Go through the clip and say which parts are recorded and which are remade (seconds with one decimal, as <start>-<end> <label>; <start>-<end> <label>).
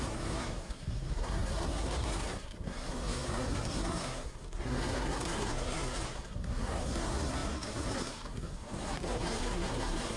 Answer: 0.0-10.2 remade